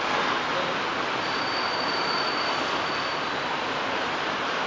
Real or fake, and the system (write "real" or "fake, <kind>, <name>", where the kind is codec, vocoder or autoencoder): real